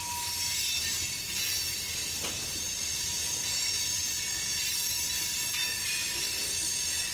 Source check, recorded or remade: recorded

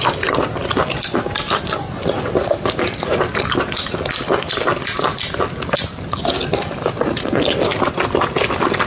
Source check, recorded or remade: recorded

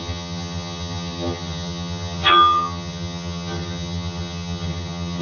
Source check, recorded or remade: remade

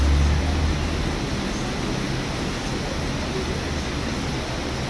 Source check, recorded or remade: recorded